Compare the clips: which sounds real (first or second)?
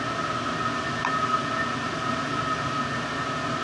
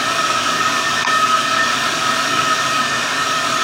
first